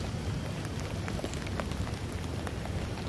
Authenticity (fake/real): real